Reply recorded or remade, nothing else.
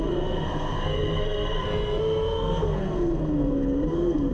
remade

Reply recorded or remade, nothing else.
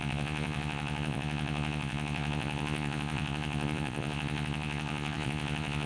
remade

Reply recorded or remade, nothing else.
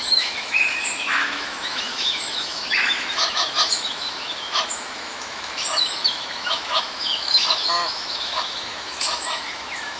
remade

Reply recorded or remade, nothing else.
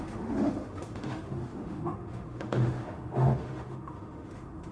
remade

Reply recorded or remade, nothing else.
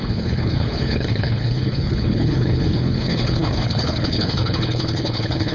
remade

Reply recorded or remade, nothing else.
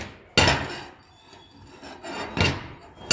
recorded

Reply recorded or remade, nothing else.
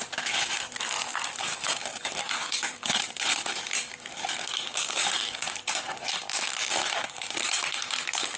remade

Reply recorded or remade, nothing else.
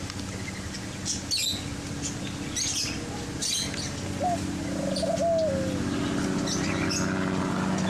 recorded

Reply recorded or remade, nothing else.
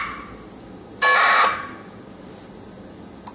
recorded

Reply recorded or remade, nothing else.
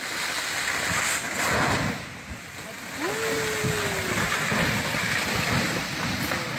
recorded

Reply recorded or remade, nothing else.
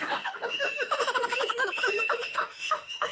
remade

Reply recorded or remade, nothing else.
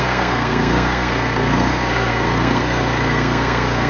remade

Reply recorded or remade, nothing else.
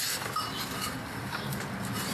recorded